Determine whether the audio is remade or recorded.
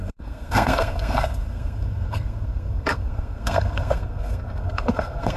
remade